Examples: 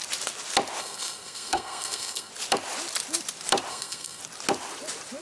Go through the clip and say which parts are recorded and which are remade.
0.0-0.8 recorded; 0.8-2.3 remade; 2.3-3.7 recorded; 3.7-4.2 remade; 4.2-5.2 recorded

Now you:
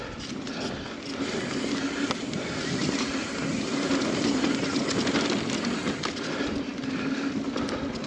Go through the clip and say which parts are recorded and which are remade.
0.0-8.1 recorded

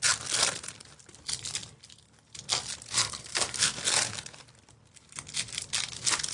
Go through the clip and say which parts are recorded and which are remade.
0.0-3.0 recorded; 3.0-3.7 remade; 3.7-6.3 recorded

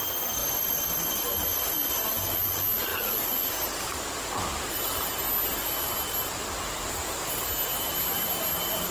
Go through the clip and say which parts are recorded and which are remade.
0.0-8.9 recorded